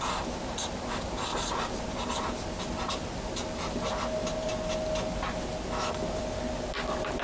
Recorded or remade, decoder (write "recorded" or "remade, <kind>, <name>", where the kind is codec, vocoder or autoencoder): recorded